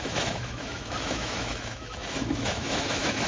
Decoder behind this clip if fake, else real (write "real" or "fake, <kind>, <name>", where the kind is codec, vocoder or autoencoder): fake, autoencoder, DAC-VAE